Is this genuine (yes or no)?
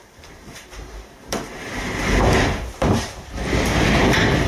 no